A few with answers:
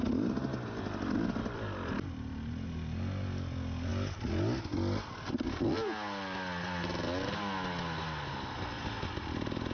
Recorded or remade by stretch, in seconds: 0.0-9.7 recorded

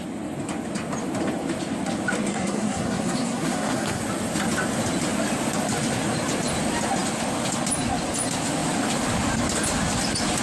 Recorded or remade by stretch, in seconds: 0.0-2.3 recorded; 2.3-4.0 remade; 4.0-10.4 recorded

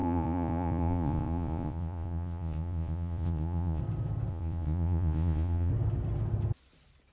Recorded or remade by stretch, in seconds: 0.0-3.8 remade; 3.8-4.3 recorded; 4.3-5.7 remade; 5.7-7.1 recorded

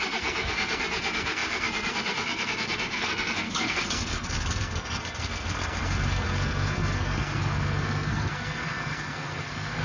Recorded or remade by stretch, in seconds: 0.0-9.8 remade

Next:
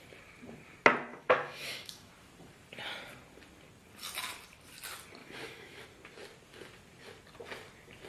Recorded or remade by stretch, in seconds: 0.0-1.1 recorded; 1.1-2.1 remade; 2.1-5.2 recorded; 5.2-5.8 remade; 5.8-8.1 recorded

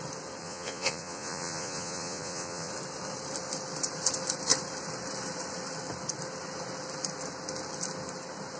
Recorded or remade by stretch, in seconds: 0.0-0.4 recorded; 0.4-2.7 remade; 2.7-8.6 recorded